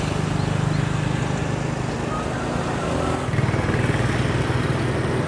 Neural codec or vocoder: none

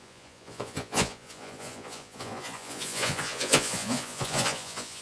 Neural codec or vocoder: vocoder, Vocos